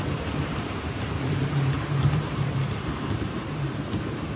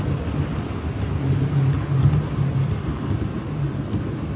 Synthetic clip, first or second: first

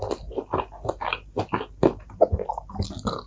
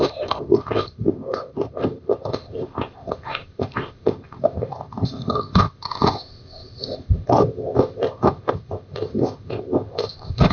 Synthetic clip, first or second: second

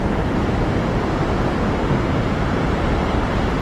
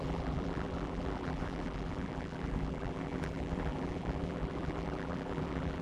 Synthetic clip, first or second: second